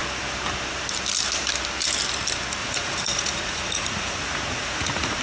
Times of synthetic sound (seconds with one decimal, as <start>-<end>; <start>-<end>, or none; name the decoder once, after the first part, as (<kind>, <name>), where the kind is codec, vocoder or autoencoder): 2.6-5.2 (vocoder, Vocos)